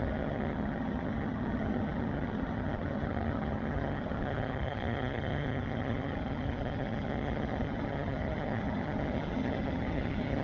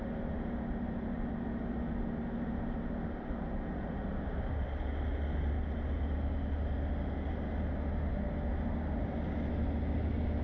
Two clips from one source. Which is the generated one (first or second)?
first